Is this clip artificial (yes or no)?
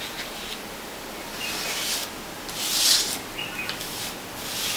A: no